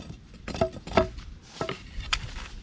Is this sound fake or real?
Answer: real